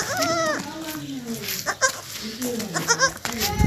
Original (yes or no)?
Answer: yes